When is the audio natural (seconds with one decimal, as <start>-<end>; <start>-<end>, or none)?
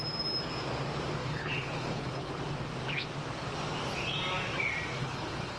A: 0.0-1.2; 2.4-5.0